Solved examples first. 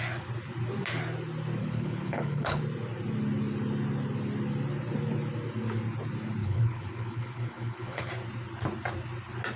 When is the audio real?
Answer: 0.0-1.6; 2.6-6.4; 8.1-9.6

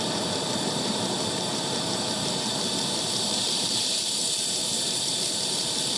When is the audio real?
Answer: none

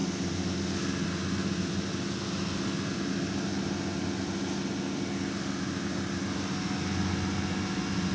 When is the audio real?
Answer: 0.0-8.1

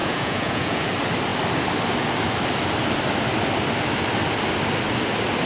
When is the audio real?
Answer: 0.8-5.5